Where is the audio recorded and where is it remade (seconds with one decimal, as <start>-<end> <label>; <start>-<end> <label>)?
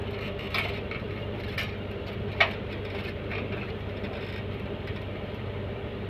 0.0-6.1 recorded